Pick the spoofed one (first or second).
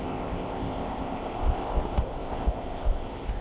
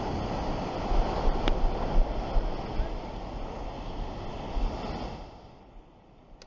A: first